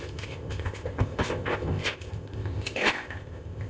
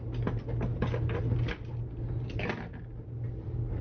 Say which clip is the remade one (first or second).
first